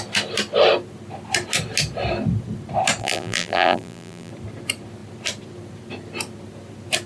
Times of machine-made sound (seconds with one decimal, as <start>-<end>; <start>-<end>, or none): 3.0-4.3